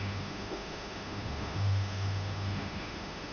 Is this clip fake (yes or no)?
yes